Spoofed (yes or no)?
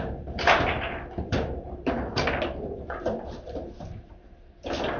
yes